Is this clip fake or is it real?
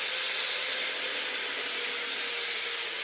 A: real